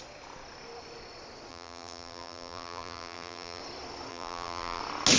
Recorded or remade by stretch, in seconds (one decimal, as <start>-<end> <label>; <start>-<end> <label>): 0.0-1.5 recorded; 1.5-3.6 remade; 3.6-4.1 recorded; 4.1-4.8 remade; 4.8-5.2 recorded